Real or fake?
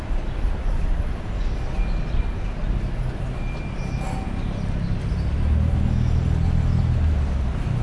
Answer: real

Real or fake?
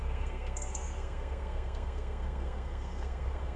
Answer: fake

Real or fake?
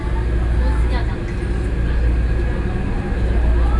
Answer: real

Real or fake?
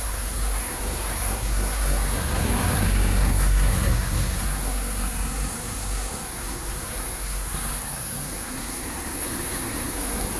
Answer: fake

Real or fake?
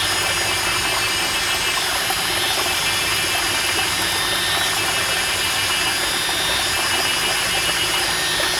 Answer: real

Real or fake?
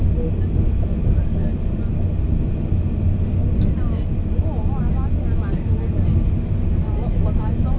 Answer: real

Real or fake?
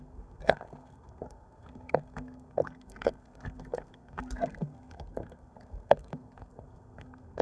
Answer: fake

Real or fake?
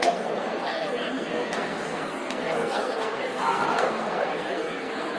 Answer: fake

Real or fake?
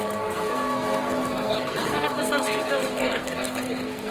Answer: fake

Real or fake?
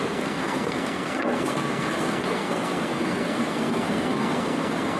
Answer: fake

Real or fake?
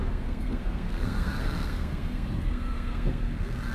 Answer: fake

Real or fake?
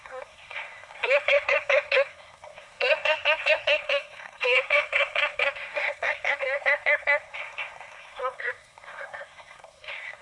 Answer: fake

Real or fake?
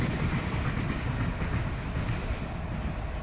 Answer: real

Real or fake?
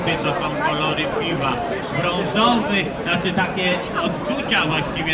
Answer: real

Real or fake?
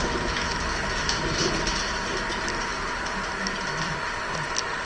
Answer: real